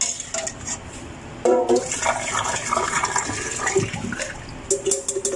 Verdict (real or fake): real